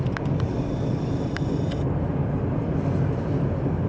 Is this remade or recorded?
recorded